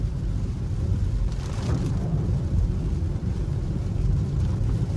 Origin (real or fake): fake